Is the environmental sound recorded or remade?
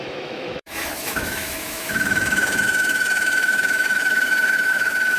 remade